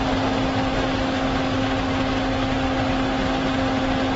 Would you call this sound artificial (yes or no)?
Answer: no